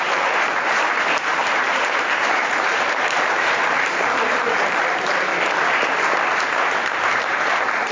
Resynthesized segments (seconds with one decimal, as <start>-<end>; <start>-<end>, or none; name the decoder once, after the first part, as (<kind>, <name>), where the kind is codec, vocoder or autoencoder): 0.0-5.3 (vocoder, BigVGAN v2); 7.2-7.9